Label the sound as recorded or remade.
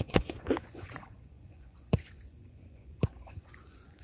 remade